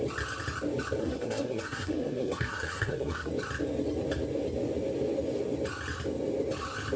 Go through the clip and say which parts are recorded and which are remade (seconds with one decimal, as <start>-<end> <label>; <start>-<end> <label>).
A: 0.0-1.0 recorded; 1.0-3.3 remade; 3.3-7.0 recorded

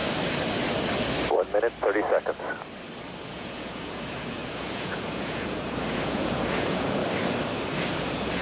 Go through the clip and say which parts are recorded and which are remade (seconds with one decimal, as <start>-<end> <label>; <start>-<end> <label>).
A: 0.0-3.2 recorded; 3.2-7.0 remade; 7.0-7.9 recorded; 7.9-8.4 remade

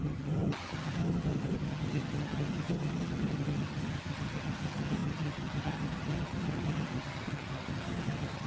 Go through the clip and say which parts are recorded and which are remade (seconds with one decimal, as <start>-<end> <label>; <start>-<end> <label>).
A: 0.0-8.5 remade

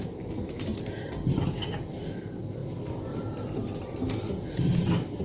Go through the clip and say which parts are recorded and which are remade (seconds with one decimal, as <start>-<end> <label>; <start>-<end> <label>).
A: 0.0-0.7 recorded; 0.7-2.0 remade; 2.0-2.6 recorded; 2.6-4.3 remade; 4.3-5.2 recorded

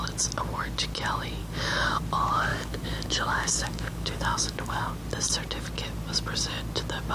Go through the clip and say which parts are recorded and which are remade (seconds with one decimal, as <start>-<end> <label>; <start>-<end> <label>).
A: 0.0-1.4 recorded; 1.4-2.0 remade; 2.0-2.5 recorded; 2.5-4.9 remade; 4.9-7.1 recorded

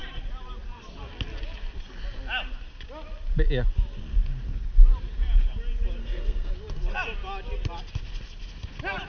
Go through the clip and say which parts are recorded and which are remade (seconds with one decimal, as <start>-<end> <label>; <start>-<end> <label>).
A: 0.0-6.0 recorded; 6.0-6.5 remade; 6.5-9.1 recorded